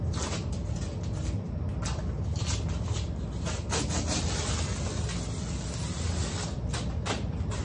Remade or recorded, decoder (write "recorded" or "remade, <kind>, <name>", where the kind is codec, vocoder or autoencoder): recorded